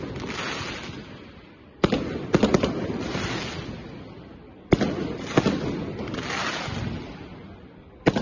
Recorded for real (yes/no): yes